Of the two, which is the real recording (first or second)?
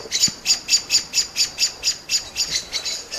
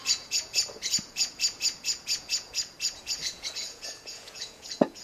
first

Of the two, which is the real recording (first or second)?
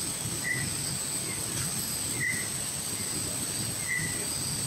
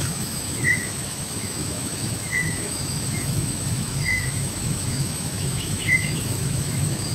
first